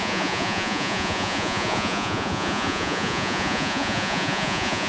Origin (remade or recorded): remade